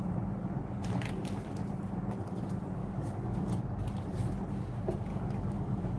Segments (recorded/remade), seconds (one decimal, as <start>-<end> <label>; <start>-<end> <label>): 0.0-0.4 recorded; 0.4-1.1 remade; 1.1-2.8 recorded; 2.8-3.6 remade; 3.6-5.1 recorded; 5.1-6.0 remade